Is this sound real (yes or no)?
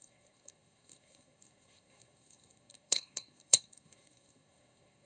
no